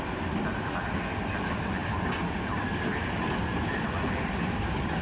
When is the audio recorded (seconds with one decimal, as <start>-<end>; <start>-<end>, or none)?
0.0-1.8